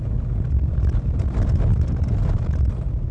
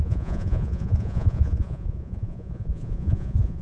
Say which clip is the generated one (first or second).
second